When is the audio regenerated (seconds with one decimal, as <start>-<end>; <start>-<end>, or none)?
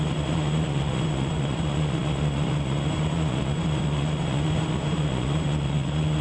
0.0-6.2